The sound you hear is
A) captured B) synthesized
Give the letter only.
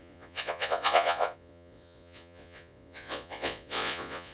B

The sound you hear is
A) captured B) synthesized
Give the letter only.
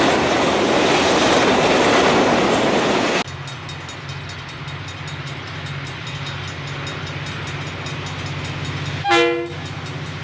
A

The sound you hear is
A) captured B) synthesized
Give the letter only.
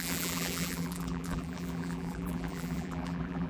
B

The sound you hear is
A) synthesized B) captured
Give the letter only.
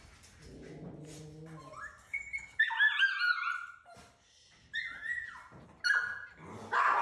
B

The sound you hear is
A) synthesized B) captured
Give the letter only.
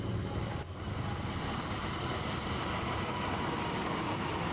B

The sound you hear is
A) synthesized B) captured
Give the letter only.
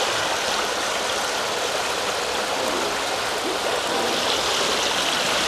B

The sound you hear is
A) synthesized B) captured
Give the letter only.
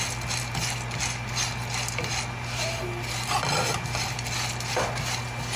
B